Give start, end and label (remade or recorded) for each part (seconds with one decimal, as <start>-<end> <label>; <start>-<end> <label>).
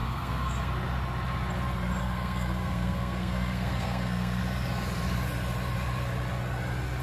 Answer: 0.0-0.7 remade; 0.7-2.0 recorded; 2.0-4.4 remade; 4.4-7.0 recorded